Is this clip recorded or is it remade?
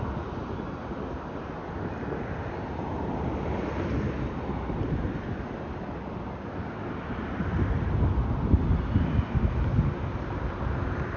recorded